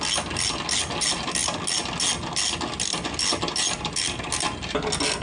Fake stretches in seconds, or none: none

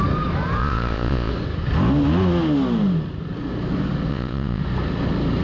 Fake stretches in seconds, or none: 0.6-1.3 (vocoder, Vocos); 4.1-4.6

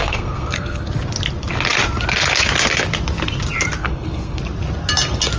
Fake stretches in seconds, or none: 0.0-0.9 (codec, SNAC); 3.8-4.4

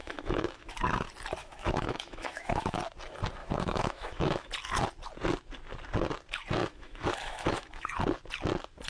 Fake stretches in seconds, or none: 0.0-0.7 (autoencoder, DAC-VAE); 1.4-2.8; 3.4-4.5; 6.6-7.9

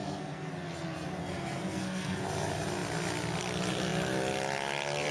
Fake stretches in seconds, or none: 0.0-0.5 (codec, SNAC); 1.2-2.2

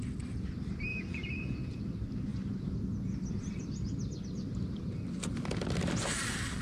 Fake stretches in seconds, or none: 0.9-1.8 (vocoder, Vocos)